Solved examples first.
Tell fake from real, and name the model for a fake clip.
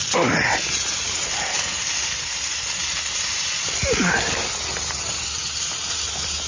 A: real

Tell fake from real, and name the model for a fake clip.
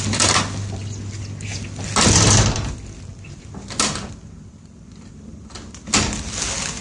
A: real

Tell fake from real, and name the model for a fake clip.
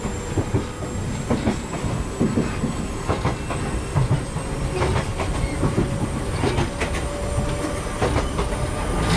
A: real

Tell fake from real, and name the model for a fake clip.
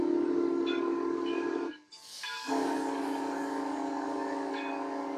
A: fake, codec, DAC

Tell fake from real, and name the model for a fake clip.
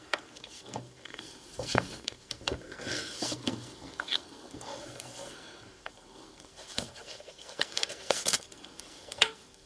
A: fake, codec, SNAC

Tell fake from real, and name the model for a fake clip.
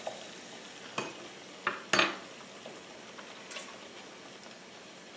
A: real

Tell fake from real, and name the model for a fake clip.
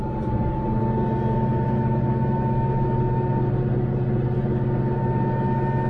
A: real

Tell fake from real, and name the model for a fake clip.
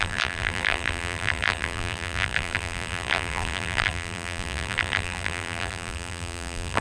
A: fake, vocoder, BigVGAN v2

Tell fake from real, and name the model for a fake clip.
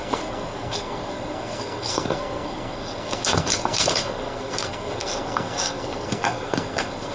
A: fake, codec, SNAC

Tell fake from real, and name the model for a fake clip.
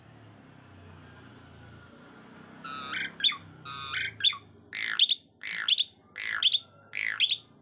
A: real